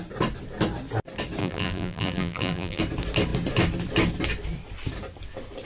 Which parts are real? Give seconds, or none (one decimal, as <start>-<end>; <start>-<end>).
0.0-1.4; 2.8-5.7